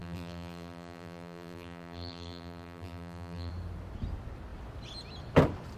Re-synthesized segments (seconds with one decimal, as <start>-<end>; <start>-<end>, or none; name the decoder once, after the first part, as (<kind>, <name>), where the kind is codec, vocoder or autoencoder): 0.0-3.5 (vocoder, BigVGAN v2)